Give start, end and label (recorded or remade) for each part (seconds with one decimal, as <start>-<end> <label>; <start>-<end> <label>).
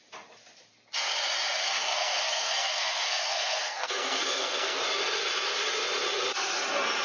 0.0-1.6 recorded; 1.6-4.8 remade; 4.8-7.0 recorded